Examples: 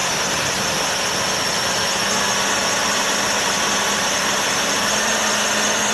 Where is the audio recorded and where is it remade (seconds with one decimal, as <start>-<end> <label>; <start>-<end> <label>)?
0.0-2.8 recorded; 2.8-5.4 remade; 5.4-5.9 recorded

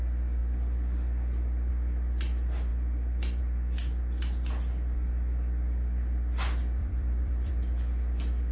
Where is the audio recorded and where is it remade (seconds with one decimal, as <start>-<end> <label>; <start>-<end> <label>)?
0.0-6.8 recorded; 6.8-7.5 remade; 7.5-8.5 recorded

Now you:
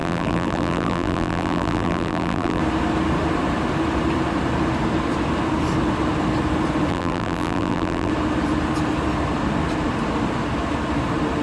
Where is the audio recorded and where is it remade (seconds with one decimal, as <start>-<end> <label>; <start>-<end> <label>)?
0.0-2.6 remade; 2.6-6.9 recorded; 6.9-8.1 remade; 8.1-11.4 recorded

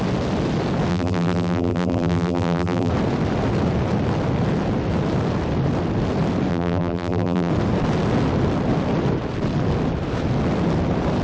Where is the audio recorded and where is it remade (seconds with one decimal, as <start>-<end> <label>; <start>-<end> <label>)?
0.0-0.9 recorded; 0.9-2.9 remade; 2.9-6.5 recorded; 6.5-7.5 remade; 7.5-11.2 recorded

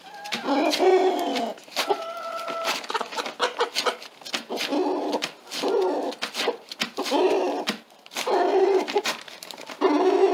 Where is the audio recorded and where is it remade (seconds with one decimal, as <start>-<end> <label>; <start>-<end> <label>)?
0.0-4.7 recorded; 4.7-9.0 remade; 9.0-10.3 recorded

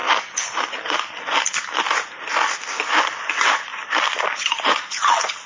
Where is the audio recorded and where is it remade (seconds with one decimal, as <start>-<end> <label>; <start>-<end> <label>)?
0.0-3.3 recorded; 3.3-3.7 remade; 3.7-5.0 recorded; 5.0-5.5 remade